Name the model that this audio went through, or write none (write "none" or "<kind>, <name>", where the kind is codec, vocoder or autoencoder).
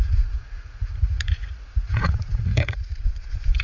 vocoder, Vocos